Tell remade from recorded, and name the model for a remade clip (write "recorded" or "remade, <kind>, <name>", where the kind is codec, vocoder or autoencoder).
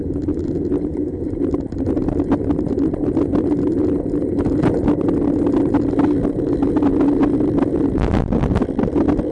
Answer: recorded